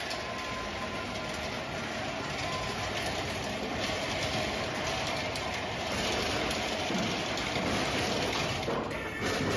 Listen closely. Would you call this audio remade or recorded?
recorded